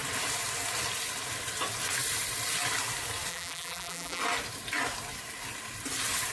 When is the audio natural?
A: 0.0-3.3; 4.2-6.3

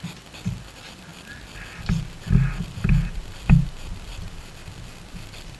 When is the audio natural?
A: 0.0-5.6

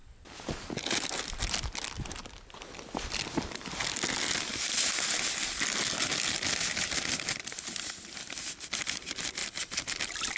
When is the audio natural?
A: 0.0-10.4

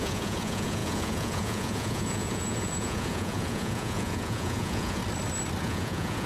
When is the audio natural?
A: 5.0-5.6

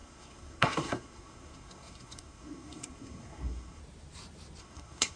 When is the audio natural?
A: 3.8-4.6